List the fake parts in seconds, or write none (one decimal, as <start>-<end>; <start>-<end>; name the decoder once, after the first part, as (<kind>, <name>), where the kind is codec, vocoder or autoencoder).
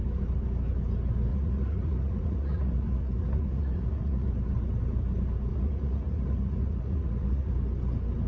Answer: 1.3-4.3 (vocoder, Vocos); 5.5-7.5